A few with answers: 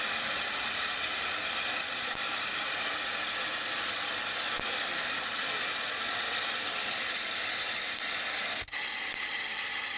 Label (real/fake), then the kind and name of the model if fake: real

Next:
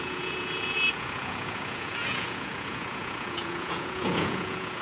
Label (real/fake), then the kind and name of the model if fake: fake, vocoder, Vocos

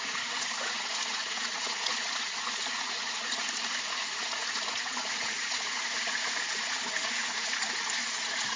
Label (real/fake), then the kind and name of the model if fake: fake, vocoder, Vocos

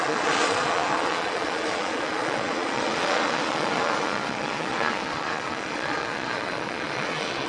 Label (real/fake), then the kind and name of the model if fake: fake, vocoder, Vocos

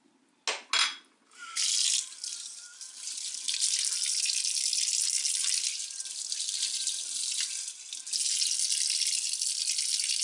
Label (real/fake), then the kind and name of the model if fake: real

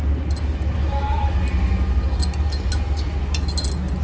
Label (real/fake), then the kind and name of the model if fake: real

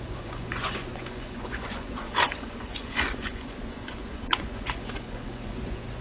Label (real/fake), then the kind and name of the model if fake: fake, vocoder, Vocos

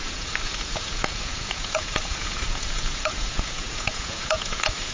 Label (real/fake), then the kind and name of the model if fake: fake, vocoder, Vocos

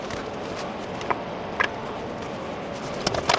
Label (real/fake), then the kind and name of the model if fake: real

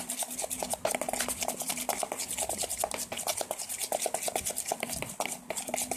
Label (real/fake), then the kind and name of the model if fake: real